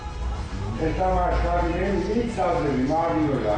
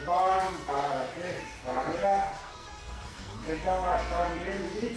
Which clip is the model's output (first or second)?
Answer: second